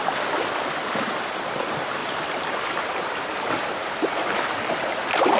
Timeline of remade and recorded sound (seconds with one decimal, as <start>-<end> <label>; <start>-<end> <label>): 0.0-5.4 recorded